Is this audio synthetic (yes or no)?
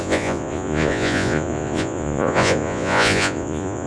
yes